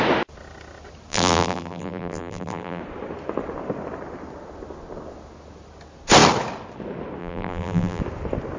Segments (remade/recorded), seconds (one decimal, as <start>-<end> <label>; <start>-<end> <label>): 0.0-1.1 recorded; 1.1-2.8 remade; 2.8-7.2 recorded; 7.2-8.0 remade; 8.0-8.6 recorded